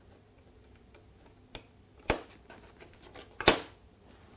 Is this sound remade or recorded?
recorded